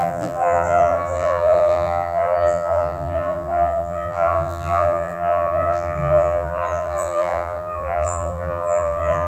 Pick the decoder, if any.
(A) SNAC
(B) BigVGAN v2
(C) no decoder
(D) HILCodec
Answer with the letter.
B